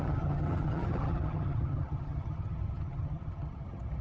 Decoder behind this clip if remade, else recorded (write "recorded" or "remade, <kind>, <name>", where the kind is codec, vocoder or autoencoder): remade, vocoder, HiFi-GAN